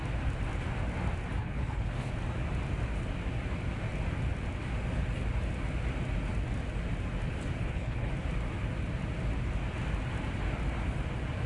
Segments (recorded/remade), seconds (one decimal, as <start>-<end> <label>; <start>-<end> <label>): 0.0-1.4 recorded; 1.4-2.1 remade; 2.1-7.6 recorded; 7.6-8.1 remade; 8.1-11.5 recorded